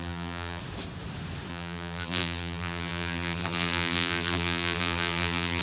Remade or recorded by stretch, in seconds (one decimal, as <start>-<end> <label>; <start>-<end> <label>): 0.0-0.6 remade; 0.6-1.5 recorded; 1.5-5.6 remade